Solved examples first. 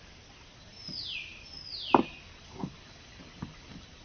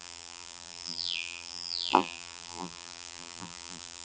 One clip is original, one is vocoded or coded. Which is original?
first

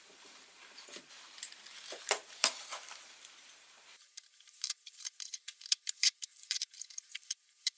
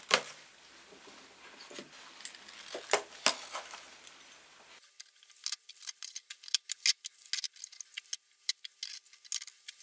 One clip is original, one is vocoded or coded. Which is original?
second